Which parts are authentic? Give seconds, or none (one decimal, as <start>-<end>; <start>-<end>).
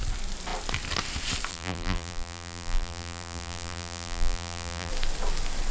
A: 0.0-1.5; 4.9-5.7